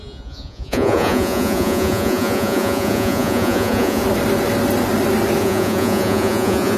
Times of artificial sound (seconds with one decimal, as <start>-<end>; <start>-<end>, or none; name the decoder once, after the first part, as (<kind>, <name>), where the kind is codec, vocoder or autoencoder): 0.0-4.0 (vocoder, Vocos); 5.4-6.8